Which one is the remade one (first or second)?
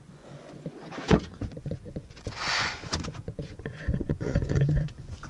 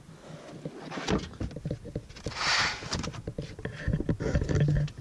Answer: first